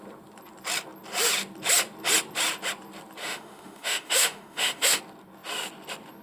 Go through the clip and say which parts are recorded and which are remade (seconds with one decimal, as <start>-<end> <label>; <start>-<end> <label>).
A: 0.0-3.2 recorded; 3.2-5.0 remade; 5.0-6.2 recorded